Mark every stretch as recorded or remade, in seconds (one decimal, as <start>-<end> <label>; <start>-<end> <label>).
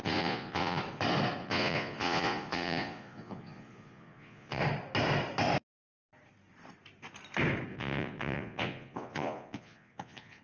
0.0-0.8 remade; 0.8-1.4 recorded; 1.4-4.6 remade; 4.6-7.7 recorded; 7.7-10.4 remade